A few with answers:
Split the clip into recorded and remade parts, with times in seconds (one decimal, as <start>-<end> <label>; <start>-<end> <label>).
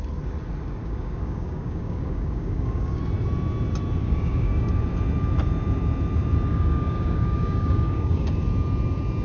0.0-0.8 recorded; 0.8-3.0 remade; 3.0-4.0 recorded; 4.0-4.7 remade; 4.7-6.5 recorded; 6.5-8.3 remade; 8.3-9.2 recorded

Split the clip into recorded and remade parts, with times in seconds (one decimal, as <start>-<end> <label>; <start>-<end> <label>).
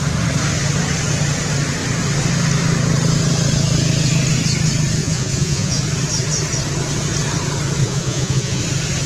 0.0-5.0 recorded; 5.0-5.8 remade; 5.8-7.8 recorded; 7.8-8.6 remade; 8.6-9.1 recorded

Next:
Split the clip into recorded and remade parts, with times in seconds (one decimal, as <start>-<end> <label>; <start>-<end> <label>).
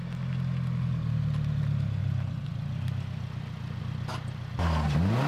0.0-5.3 recorded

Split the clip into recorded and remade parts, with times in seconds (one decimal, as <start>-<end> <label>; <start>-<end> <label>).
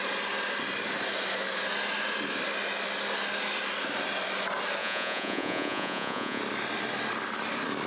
0.0-4.8 recorded; 4.8-6.4 remade; 6.4-7.9 recorded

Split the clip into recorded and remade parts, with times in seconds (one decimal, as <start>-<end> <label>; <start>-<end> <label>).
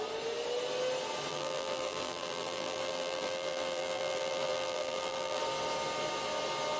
0.0-1.3 recorded; 1.3-5.4 remade; 5.4-6.8 recorded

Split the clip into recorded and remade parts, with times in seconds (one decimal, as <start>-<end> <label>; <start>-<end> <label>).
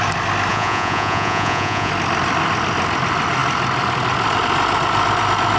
0.0-0.5 recorded; 0.5-1.9 remade; 1.9-5.6 recorded